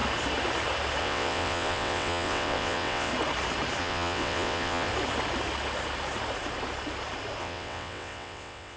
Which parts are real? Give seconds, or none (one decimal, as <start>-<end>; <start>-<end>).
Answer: 0.0-1.0; 3.1-3.8; 4.9-7.4